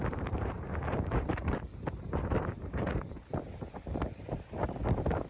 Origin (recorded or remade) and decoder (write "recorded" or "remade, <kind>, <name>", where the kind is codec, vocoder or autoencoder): remade, vocoder, BigVGAN v2